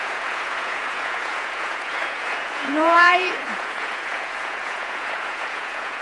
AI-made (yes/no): yes